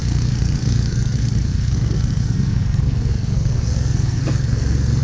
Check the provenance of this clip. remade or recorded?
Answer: remade